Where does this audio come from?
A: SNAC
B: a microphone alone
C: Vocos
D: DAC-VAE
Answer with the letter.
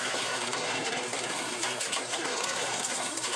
A